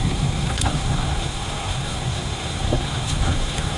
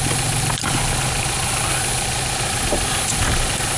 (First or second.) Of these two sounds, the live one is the second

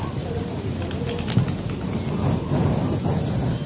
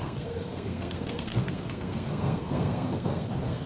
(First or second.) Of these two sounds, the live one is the first